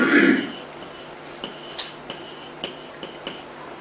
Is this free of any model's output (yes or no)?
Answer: yes